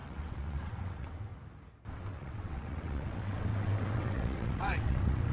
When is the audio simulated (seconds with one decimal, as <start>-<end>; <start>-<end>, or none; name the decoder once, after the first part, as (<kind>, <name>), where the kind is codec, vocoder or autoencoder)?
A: 0.0-1.3 (vocoder, WaveNeXt); 1.9-5.3